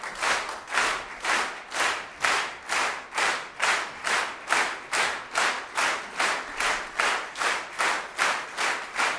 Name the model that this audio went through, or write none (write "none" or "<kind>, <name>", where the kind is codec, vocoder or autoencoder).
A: none